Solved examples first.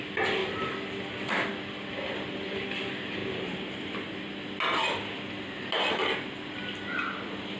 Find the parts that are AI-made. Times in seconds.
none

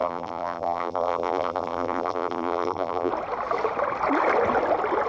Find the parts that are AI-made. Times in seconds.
0.0-3.1 (vocoder, BigVGAN v2)